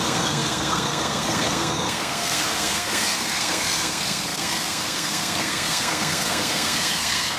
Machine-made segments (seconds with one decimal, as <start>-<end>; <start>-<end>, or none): 0.0-7.4